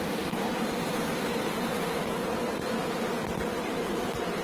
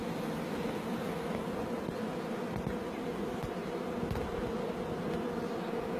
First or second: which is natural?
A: second